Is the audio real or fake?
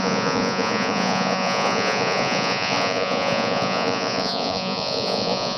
fake